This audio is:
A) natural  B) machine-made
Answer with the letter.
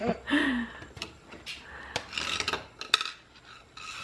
A